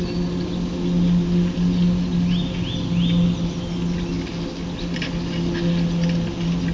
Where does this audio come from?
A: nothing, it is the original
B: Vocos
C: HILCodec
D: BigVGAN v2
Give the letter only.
A